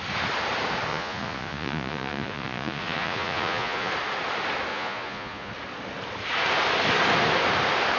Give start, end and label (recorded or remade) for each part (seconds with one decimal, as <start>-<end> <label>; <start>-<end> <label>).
0.0-0.9 recorded; 0.9-3.9 remade; 3.9-4.7 recorded; 4.7-5.5 remade; 5.5-8.0 recorded